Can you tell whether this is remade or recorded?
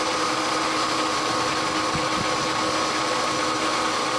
recorded